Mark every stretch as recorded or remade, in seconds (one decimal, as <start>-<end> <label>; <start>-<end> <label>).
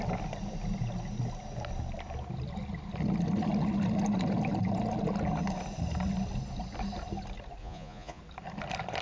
0.0-7.6 recorded; 7.6-8.2 remade; 8.2-9.0 recorded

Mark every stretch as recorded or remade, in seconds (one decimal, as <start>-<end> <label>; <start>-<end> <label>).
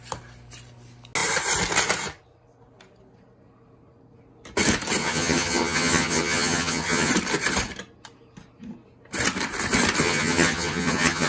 0.0-5.0 recorded; 5.0-7.1 remade; 7.1-10.0 recorded; 10.0-11.3 remade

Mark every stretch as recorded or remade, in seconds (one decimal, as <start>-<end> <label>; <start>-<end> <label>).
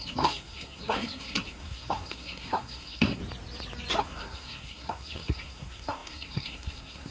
0.0-3.2 remade; 3.2-4.0 recorded; 4.0-7.1 remade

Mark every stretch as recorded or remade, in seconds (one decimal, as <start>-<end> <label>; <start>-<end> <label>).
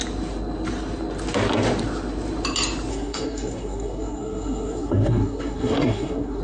0.0-2.9 recorded; 2.9-6.4 remade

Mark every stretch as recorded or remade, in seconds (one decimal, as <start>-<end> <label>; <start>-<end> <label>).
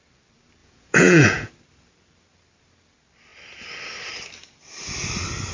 0.0-0.6 recorded; 0.6-1.5 remade; 1.5-5.5 recorded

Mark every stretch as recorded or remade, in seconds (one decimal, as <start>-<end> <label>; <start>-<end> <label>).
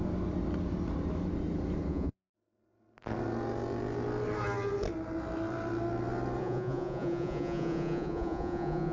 0.0-1.9 recorded; 1.9-2.3 remade; 2.3-6.4 recorded; 6.4-8.9 remade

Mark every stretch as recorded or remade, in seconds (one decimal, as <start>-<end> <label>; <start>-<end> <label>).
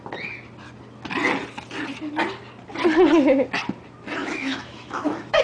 0.0-4.2 recorded; 4.2-5.4 remade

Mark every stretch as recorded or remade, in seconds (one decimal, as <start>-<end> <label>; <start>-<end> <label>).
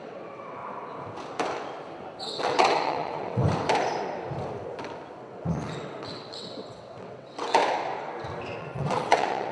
0.0-0.6 remade; 0.6-2.2 recorded; 2.2-3.4 remade; 3.4-5.2 recorded; 5.2-7.6 remade; 7.6-8.6 recorded; 8.6-9.5 remade